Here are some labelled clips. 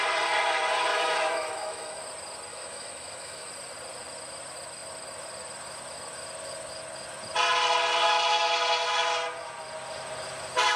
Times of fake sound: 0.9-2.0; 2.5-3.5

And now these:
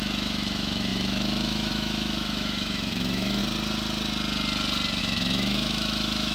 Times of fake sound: 0.0-3.4; 5.0-6.3

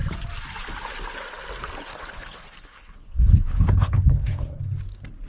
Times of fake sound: 1.9-4.6

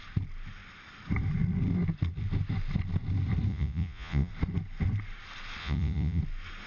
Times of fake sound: 3.5-4.3; 5.6-6.2